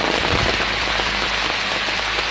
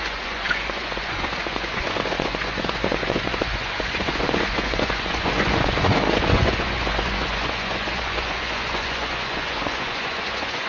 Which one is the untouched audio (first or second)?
first